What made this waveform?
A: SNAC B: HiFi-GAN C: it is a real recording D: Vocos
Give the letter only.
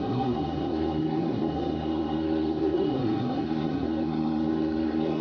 A